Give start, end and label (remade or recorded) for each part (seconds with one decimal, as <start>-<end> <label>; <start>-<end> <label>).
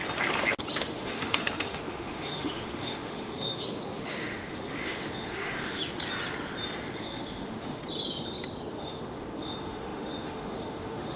0.0-0.7 recorded; 0.7-5.8 remade; 5.8-7.0 recorded; 7.0-7.8 remade; 7.8-8.7 recorded; 8.7-11.2 remade